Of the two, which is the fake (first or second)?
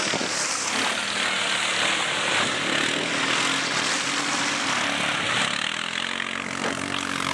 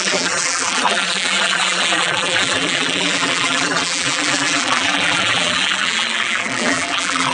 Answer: second